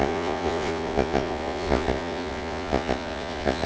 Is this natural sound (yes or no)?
no